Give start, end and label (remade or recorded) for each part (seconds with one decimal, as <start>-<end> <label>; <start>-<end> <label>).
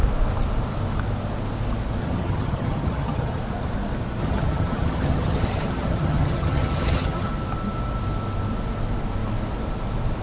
0.0-2.0 recorded; 2.0-3.4 remade; 3.4-4.2 recorded; 4.2-7.3 remade; 7.3-10.2 recorded